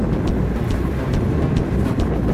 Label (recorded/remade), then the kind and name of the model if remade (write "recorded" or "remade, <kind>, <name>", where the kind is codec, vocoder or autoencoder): recorded